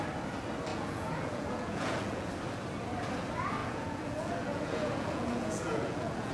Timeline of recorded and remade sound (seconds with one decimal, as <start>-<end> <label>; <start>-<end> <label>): 0.0-0.7 recorded; 0.7-2.3 remade; 2.3-3.6 recorded; 3.6-6.3 remade